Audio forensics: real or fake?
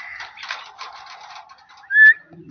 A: fake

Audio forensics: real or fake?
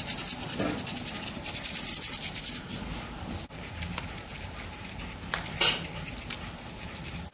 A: real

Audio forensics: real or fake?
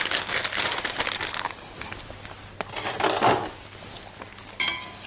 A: real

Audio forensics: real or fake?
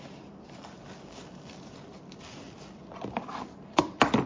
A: real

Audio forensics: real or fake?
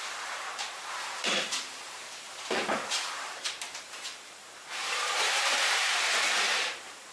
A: fake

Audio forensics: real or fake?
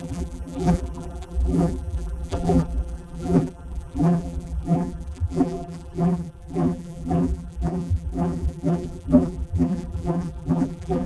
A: fake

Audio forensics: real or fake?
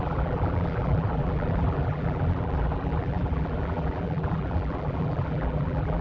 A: fake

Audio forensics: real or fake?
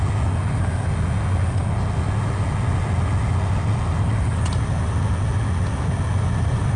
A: real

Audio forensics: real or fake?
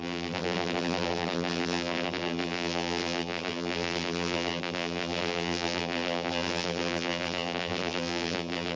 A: fake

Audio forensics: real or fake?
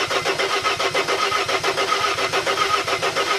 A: real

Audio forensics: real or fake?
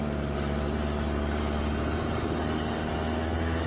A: real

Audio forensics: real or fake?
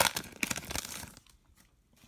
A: real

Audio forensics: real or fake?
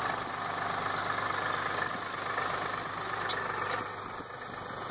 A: real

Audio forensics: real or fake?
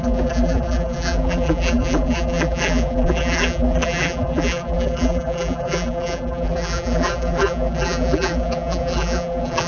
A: fake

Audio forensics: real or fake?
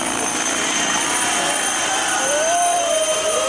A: fake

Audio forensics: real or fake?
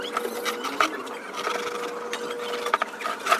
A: real